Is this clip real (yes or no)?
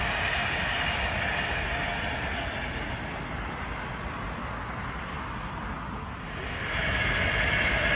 yes